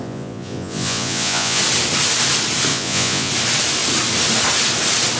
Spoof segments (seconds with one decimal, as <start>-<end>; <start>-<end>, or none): 0.0-1.6; 2.7-3.3